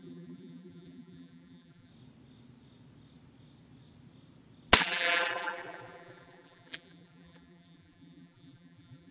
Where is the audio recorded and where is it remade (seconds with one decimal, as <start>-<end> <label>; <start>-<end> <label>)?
0.0-1.9 remade; 1.9-4.8 recorded; 4.8-9.1 remade